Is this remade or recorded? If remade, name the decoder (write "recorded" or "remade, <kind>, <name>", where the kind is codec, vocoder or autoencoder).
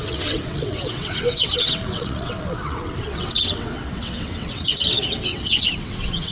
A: remade, vocoder, WaveNeXt